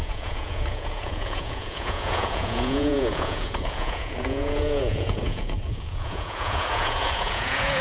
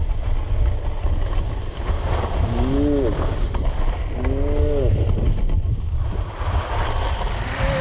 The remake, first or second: first